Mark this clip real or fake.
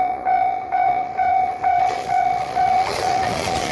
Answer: fake